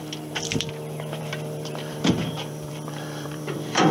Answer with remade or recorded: remade